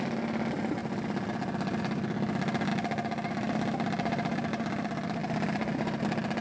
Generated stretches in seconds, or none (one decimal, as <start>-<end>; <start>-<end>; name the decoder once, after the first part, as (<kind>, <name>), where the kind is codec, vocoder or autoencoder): none